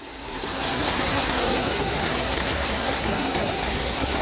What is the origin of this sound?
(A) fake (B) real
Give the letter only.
A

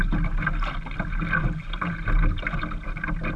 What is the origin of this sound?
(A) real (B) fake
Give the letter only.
A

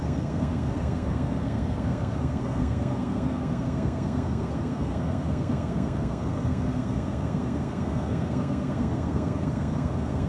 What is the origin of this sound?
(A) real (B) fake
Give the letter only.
B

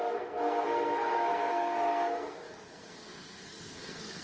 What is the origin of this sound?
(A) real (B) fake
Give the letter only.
B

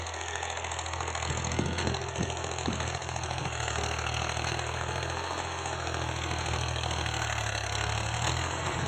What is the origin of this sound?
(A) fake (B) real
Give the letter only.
A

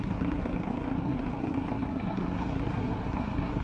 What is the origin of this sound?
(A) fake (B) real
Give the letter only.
A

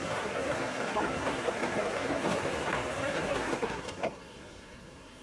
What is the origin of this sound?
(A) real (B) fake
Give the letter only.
B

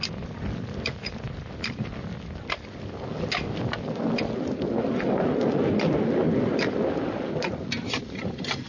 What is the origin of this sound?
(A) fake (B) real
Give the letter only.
B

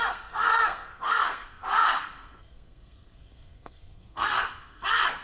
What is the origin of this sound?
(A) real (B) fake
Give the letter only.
B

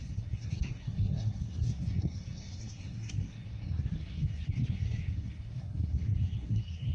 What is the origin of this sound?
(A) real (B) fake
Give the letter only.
B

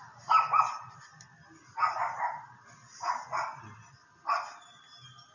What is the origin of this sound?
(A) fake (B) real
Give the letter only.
B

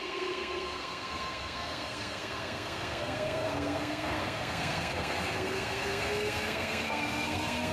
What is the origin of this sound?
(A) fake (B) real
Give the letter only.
A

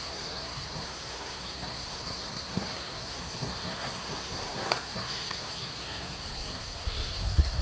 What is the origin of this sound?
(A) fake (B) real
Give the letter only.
A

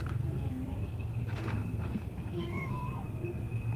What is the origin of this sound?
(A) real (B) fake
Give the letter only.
B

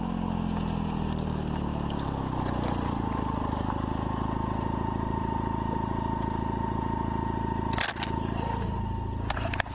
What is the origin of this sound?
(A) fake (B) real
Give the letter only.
B